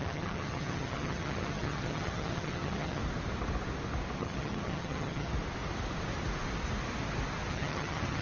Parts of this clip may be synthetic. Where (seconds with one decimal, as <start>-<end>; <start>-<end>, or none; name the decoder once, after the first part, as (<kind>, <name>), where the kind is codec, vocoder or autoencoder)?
0.0-3.0 (vocoder, HiFi-GAN); 4.2-5.3; 7.5-8.2